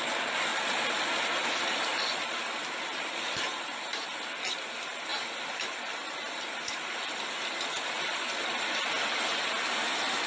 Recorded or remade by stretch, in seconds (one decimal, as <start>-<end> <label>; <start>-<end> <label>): 0.0-0.5 recorded; 0.5-1.2 remade; 1.2-10.3 recorded